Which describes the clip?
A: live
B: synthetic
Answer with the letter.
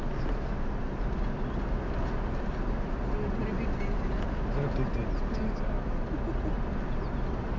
A